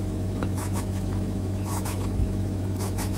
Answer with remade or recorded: remade